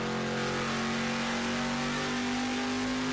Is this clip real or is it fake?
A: real